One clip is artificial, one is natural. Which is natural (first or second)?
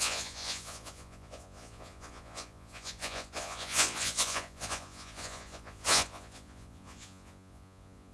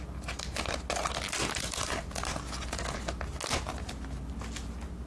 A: second